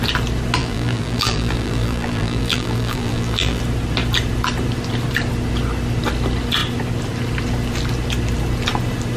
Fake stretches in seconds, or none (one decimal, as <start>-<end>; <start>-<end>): 0.6-3.6